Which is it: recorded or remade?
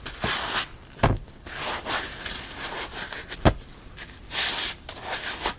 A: recorded